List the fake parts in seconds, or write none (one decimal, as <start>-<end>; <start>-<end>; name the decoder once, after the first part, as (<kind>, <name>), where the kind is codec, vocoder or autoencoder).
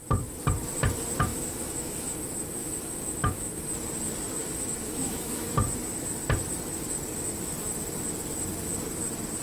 1.3-2.2 (autoencoder, DAC-VAE); 2.6-3.6; 4.4-5.5